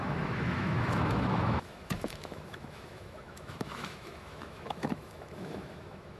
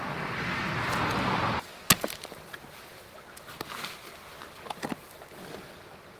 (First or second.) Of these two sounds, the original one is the second